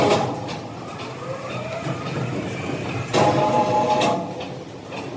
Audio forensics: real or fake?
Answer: real